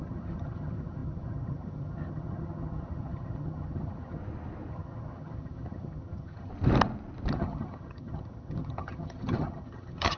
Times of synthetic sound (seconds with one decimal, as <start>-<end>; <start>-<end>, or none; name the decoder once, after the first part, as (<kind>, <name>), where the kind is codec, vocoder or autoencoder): 0.0-4.2 (vocoder, HiFi-GAN); 4.7-6.5; 7.3-10.2